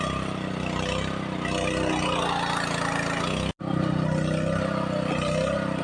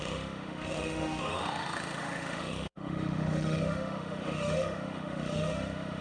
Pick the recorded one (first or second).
first